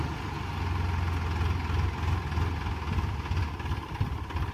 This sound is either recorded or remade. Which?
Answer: recorded